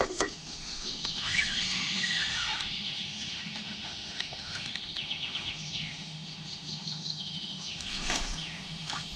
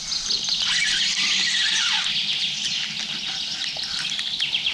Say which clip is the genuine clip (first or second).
second